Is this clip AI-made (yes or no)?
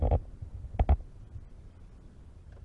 no